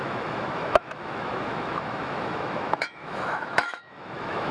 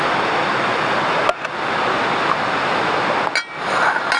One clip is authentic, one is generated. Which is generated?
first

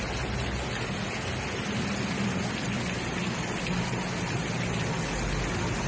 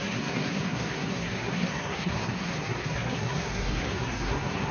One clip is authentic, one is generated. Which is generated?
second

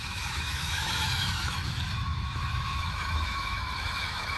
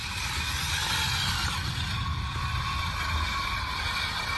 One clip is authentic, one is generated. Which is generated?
first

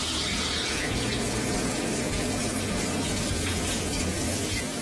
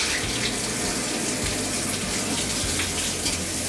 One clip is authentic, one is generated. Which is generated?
first